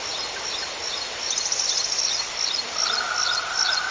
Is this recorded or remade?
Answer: recorded